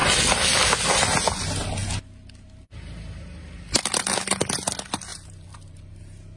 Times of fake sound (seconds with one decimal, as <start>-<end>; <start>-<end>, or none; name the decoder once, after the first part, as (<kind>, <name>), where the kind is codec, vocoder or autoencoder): 5.1-6.4 (vocoder, BigVGAN v2)